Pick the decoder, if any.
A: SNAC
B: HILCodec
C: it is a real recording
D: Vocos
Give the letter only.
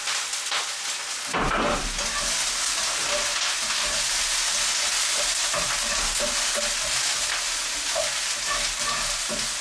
C